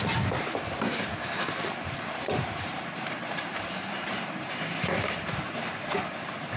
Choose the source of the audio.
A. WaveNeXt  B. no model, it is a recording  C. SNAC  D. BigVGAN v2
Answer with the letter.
D